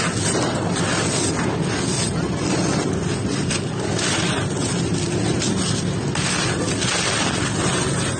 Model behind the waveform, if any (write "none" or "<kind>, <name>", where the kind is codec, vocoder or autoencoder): none